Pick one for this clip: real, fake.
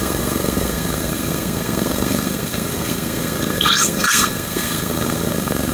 fake